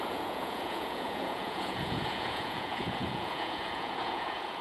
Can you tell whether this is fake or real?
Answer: fake